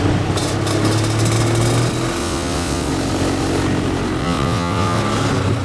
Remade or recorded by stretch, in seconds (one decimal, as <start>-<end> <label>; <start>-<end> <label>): 0.0-2.2 recorded; 2.2-2.9 remade; 2.9-4.2 recorded; 4.2-5.0 remade; 5.0-5.6 recorded